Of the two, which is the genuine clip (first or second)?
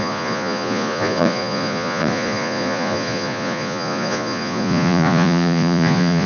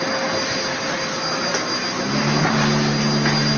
second